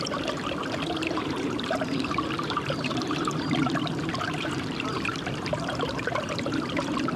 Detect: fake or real fake